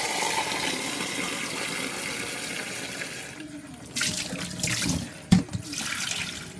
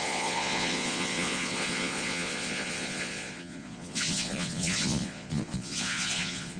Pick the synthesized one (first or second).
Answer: second